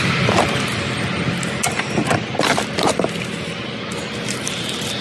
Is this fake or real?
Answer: real